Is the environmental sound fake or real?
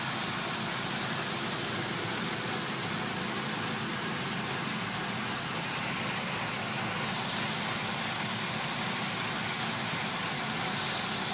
real